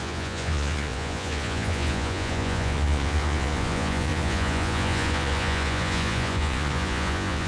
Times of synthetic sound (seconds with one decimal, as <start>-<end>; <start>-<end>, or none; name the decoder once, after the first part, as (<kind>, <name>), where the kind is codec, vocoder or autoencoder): 0.0-7.5 (vocoder, Vocos)